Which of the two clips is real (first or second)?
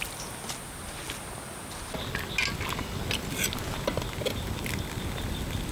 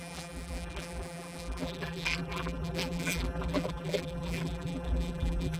first